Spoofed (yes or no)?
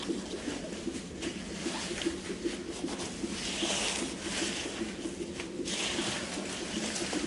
no